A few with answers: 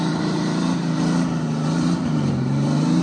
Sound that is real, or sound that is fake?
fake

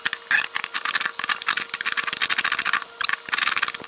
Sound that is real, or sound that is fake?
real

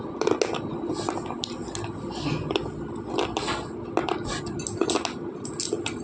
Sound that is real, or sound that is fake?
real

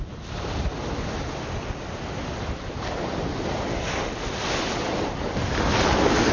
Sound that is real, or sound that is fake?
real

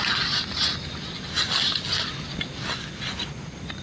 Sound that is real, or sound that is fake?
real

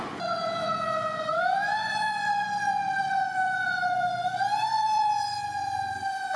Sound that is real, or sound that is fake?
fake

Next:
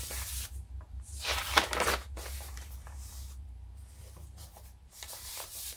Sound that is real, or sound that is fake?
fake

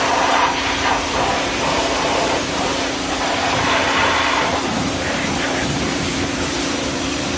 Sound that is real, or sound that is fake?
fake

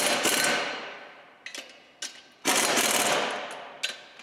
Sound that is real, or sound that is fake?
real